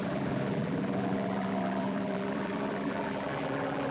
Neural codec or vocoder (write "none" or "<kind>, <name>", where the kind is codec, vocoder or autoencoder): vocoder, BigVGAN v2